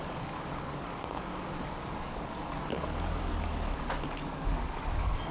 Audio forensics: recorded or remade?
remade